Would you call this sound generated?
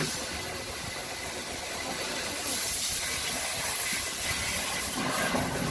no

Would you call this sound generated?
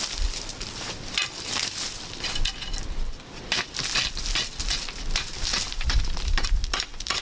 no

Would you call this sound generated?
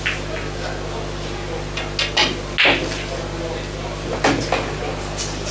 no